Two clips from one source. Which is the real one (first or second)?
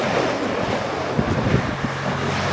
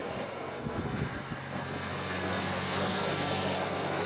first